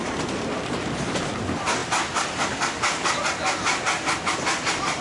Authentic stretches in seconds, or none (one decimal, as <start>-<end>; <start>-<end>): 0.0-5.0